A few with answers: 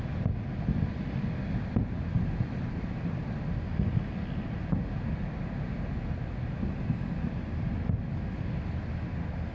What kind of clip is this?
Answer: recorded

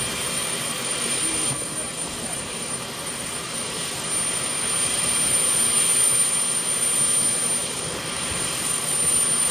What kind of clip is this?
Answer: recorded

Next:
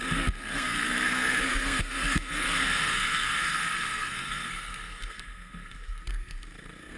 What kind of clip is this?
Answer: remade